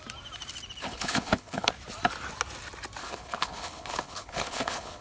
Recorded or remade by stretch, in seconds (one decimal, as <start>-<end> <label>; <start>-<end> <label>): 0.0-0.8 recorded; 0.8-1.7 remade; 1.7-3.0 recorded; 3.0-5.0 remade